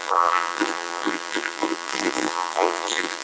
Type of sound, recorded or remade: remade